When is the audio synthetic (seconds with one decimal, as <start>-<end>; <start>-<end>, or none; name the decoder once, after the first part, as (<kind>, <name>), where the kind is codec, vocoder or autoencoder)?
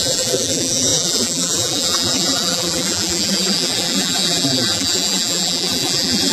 0.0-6.3 (vocoder, BigVGAN v2)